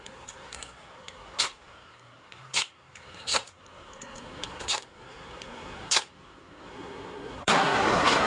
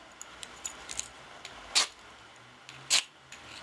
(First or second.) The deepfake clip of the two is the first